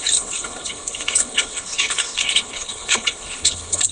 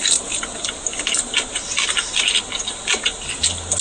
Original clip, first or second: second